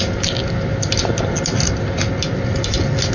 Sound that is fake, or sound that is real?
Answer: real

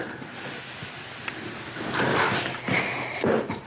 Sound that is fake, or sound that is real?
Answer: real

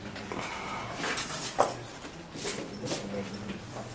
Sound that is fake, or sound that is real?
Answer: real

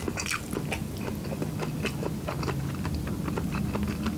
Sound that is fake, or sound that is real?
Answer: real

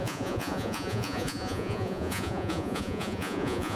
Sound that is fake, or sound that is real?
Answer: fake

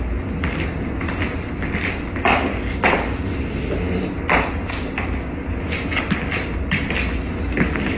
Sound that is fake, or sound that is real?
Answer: real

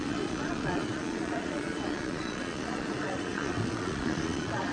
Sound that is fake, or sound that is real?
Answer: fake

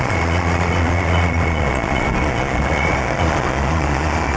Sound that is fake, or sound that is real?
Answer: fake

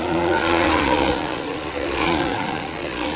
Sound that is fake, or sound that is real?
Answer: fake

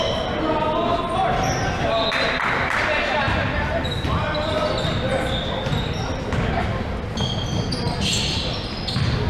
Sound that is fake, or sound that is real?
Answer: real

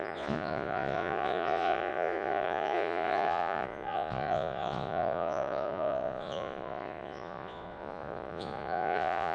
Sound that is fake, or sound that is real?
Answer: fake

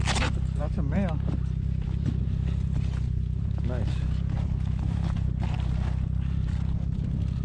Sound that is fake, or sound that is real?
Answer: real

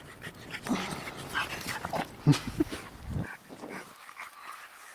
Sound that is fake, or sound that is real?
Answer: real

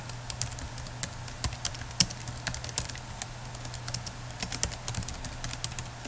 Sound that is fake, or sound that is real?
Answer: real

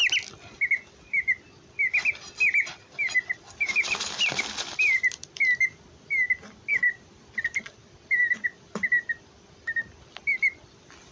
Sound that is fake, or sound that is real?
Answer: real